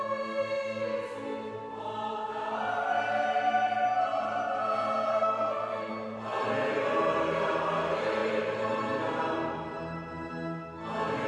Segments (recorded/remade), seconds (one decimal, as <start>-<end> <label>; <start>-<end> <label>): 0.0-5.1 recorded; 5.1-5.9 remade; 5.9-11.3 recorded